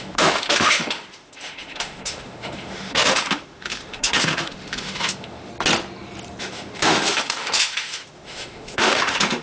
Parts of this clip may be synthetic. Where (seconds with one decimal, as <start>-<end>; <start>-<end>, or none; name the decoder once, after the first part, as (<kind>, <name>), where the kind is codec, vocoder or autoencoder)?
0.0-5.5 (autoencoder, DAC-VAE); 6.4-9.4